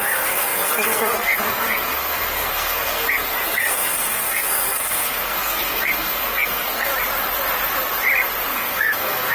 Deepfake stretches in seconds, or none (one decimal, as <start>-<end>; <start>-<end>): 0.0-6.9; 8.5-9.3